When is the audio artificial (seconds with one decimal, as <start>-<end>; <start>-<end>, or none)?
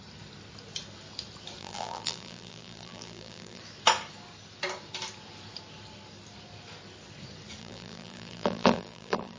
1.6-3.6; 7.6-9.4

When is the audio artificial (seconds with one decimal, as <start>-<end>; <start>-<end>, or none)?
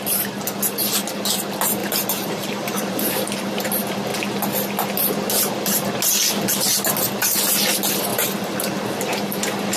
1.8-3.1; 8.1-8.8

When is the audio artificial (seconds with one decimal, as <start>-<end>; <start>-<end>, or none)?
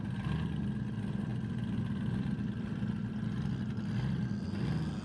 1.3-2.8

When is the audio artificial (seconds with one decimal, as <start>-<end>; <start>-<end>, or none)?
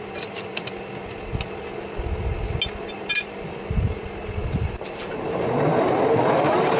4.4-6.8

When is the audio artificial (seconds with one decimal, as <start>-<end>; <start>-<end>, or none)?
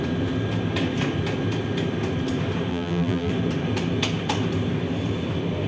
2.7-3.3